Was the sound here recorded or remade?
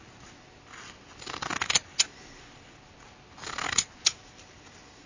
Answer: recorded